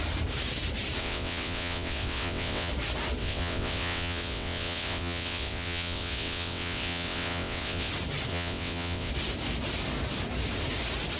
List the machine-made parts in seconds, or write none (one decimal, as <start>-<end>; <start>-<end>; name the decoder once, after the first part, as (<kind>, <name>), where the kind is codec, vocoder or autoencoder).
1.0-2.7 (vocoder, WaveNeXt); 3.2-7.9; 8.3-9.1